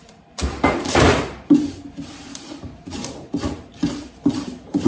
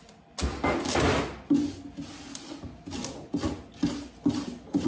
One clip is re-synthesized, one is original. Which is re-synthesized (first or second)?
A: first